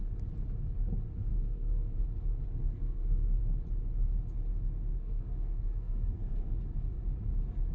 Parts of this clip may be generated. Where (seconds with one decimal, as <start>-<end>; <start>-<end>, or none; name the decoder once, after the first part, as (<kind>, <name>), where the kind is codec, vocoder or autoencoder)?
1.3-1.9 (codec, SNAC); 2.6-3.4; 4.9-6.6

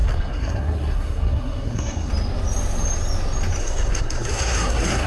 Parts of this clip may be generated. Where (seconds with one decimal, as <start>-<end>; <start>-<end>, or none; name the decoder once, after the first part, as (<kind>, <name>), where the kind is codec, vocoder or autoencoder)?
0.0-2.1 (codec, SNAC); 3.6-5.1

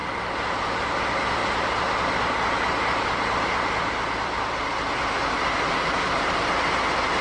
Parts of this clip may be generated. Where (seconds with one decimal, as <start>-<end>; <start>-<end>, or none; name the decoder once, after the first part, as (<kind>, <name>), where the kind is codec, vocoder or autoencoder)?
0.0-1.4 (vocoder, BigVGAN v2); 5.7-7.2

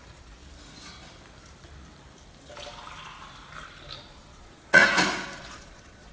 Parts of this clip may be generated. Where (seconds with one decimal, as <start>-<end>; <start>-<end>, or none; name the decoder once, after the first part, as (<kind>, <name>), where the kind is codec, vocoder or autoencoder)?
0.0-0.4 (vocoder, Vocos); 4.1-4.8; 5.4-6.1

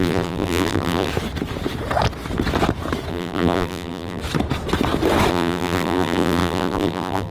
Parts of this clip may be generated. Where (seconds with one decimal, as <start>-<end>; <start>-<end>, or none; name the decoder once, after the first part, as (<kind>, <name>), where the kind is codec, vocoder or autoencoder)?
0.0-1.1 (vocoder, BigVGAN v2); 3.1-4.2; 5.3-7.3

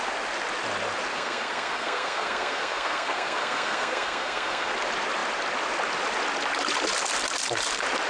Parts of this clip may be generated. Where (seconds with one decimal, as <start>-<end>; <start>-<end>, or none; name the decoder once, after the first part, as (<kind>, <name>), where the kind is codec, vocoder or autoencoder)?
1.1-4.7 (codec, SNAC)